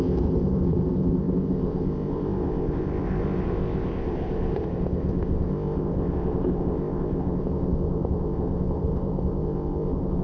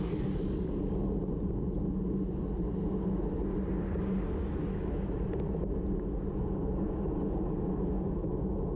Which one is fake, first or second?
first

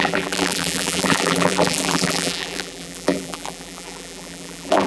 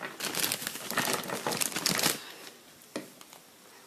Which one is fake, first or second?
first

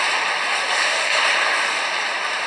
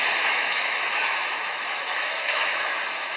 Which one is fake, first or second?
second